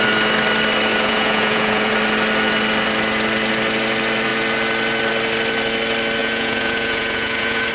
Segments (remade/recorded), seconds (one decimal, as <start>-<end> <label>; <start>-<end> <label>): 0.0-0.9 recorded; 0.9-1.9 remade; 1.9-6.2 recorded; 6.2-7.7 remade